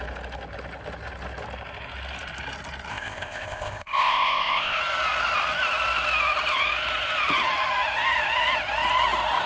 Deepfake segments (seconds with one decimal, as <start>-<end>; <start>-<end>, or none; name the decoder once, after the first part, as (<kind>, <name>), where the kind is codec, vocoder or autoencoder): 2.9-4.8 (codec, ZipCodec)